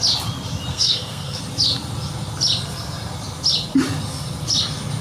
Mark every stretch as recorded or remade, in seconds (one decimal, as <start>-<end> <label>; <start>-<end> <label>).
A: 0.0-0.7 recorded; 0.7-1.4 remade; 1.4-5.0 recorded